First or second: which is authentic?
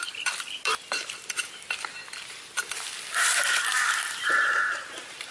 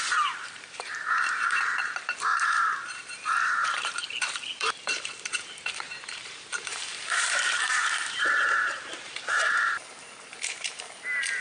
first